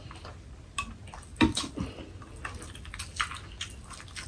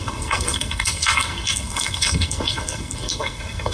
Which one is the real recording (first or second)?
first